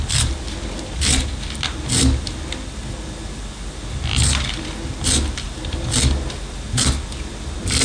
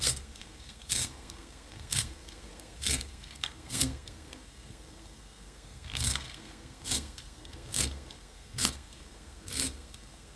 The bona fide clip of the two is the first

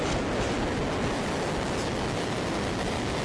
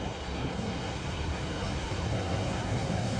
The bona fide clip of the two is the first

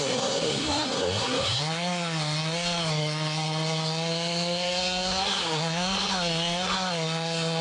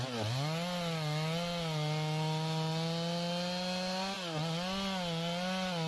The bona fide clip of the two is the second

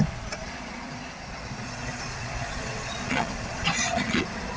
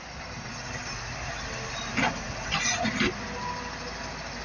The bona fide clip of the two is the second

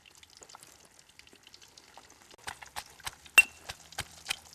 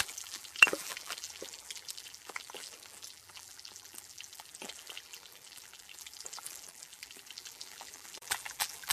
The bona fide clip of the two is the first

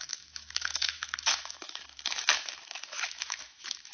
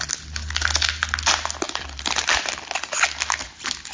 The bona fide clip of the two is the second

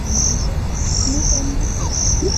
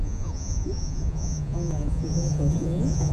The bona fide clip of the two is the first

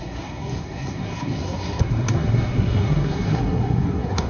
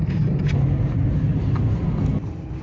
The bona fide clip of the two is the second